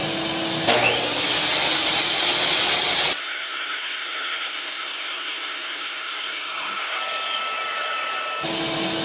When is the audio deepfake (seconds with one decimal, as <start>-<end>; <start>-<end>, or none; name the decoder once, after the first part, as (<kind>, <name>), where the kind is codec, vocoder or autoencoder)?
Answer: 3.2-7.0 (codec, SNAC)